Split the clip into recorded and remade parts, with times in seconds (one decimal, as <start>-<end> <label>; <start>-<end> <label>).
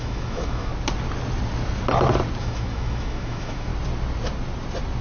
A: 0.0-0.7 remade; 0.7-2.4 recorded; 2.4-3.7 remade; 3.7-5.0 recorded